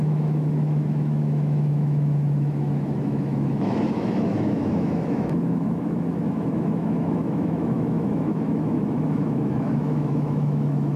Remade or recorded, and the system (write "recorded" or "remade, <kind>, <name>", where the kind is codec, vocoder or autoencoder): remade, autoencoder, DAC-VAE